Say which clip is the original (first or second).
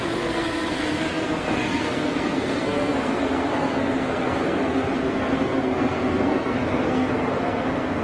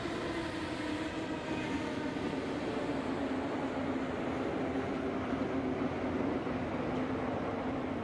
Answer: second